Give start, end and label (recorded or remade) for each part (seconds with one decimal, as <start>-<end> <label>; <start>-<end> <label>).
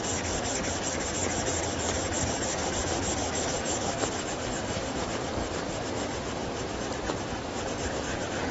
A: 0.0-5.4 recorded; 5.4-5.9 remade; 5.9-6.4 recorded; 6.4-7.6 remade; 7.6-8.5 recorded